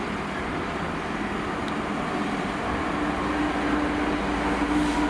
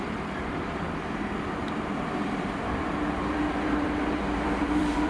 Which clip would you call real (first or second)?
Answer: first